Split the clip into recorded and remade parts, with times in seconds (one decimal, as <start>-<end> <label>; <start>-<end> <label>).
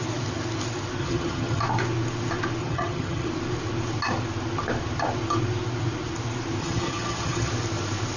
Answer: 0.0-1.0 recorded; 1.0-1.6 remade; 1.6-2.6 recorded; 2.6-3.3 remade; 3.3-6.6 recorded; 6.6-7.5 remade; 7.5-8.2 recorded